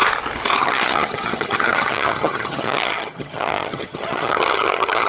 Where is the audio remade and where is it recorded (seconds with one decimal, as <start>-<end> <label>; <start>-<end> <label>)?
0.0-0.6 recorded; 0.6-5.1 remade